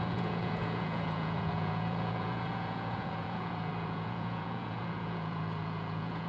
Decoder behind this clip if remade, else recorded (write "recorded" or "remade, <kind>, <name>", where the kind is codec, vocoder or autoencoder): remade, vocoder, Vocos